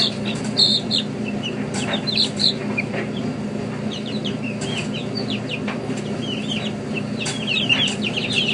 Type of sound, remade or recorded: remade